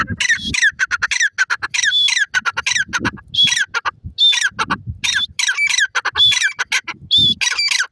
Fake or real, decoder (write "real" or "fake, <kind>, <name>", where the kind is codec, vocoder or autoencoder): real